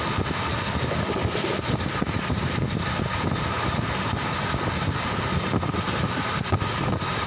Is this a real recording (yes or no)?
yes